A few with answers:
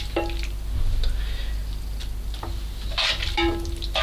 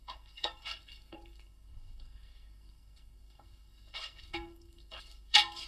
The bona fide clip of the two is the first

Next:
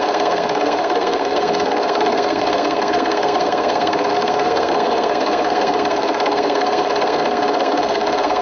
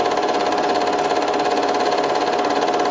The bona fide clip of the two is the second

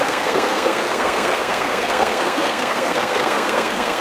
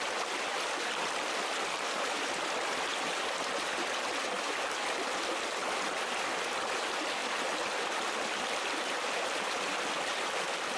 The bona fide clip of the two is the second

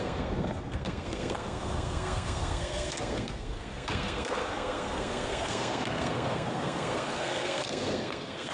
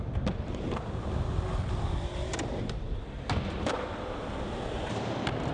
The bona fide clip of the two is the second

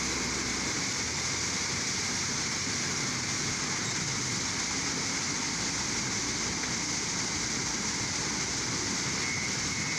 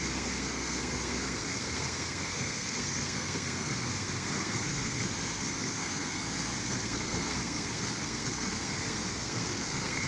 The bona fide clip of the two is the first